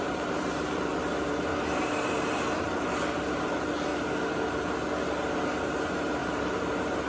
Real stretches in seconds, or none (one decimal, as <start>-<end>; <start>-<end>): 1.5-2.6; 3.9-5.4